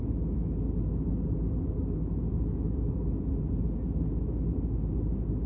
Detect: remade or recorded recorded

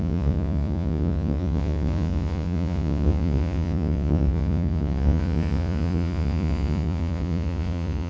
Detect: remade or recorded remade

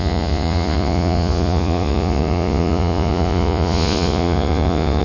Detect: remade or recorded remade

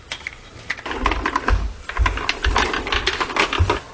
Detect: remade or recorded recorded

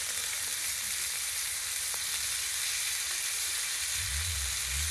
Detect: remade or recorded recorded